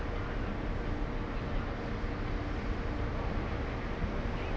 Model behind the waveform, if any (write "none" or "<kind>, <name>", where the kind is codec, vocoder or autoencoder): none